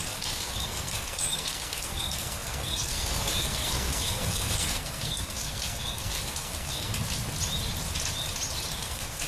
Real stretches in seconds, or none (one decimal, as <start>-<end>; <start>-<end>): 6.9-8.7